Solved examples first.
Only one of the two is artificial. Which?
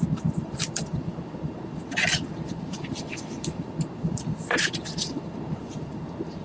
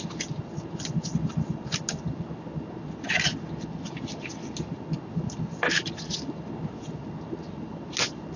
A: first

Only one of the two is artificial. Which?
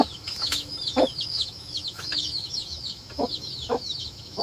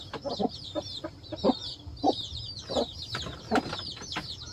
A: first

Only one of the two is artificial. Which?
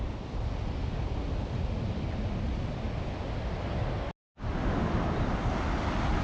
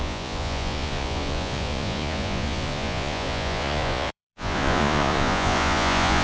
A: second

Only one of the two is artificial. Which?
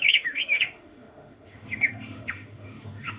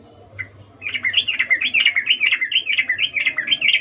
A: first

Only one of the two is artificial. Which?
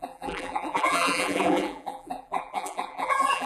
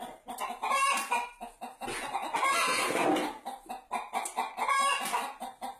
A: first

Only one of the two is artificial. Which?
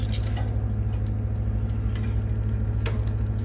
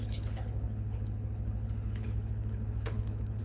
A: second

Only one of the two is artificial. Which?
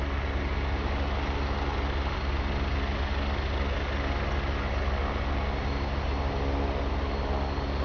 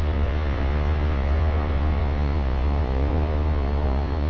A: second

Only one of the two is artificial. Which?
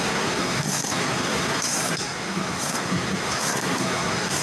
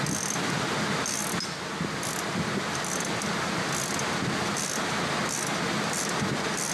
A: first